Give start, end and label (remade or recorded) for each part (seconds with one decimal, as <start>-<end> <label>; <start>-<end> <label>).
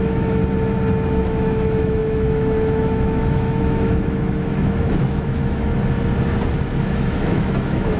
0.0-0.4 remade; 0.4-1.2 recorded; 1.2-5.7 remade; 5.7-6.8 recorded; 6.8-8.0 remade